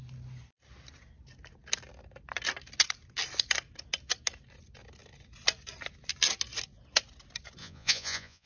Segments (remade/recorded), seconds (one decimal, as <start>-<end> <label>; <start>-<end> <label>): 0.0-7.6 recorded; 7.6-8.5 remade